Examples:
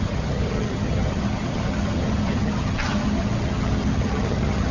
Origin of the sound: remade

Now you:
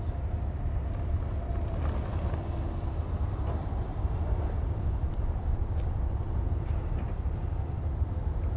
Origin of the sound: recorded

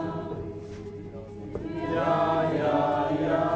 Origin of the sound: recorded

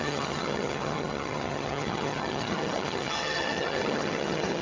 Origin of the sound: remade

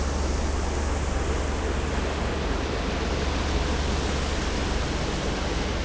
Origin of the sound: recorded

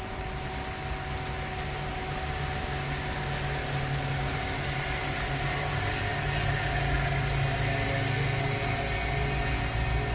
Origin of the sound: recorded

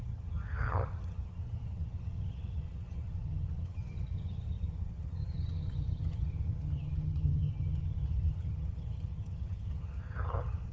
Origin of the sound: remade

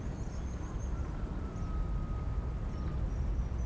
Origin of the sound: recorded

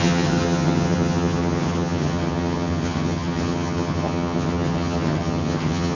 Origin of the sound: remade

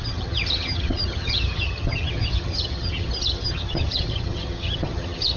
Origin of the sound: remade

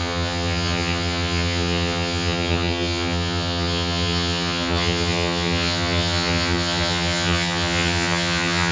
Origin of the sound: remade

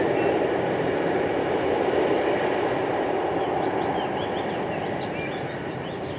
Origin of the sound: recorded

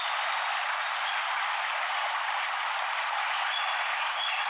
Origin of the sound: recorded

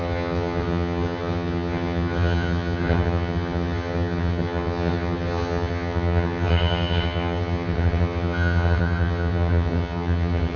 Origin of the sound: remade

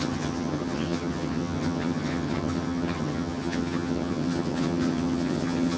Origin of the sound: remade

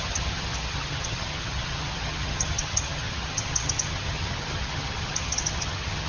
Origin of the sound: remade